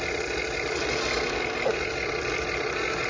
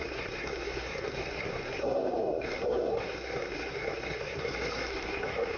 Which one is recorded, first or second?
first